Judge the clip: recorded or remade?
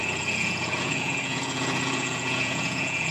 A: remade